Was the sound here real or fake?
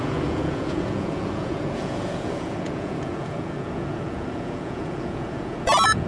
fake